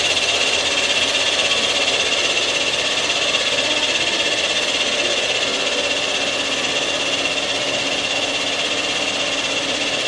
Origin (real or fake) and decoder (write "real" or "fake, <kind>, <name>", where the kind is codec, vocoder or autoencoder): real